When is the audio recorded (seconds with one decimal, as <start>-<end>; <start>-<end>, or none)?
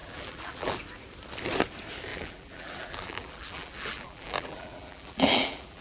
0.8-2.1